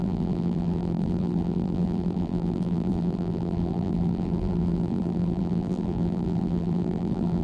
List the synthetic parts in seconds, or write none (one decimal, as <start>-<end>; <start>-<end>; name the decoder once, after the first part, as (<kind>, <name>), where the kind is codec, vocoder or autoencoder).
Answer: 0.0-7.4 (vocoder, BigVGAN v2)